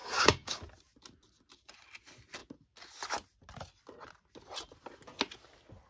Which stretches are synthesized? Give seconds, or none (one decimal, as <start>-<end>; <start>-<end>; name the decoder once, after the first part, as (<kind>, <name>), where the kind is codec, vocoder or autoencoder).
0.0-0.6 (codec, DAC)